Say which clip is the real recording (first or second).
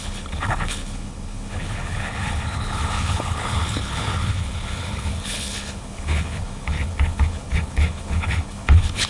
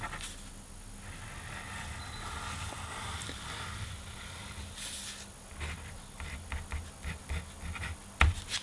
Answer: second